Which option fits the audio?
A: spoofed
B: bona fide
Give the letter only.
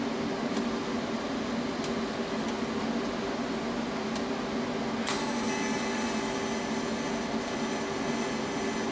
B